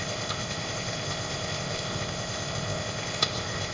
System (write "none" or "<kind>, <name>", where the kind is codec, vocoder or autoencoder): codec, ZipCodec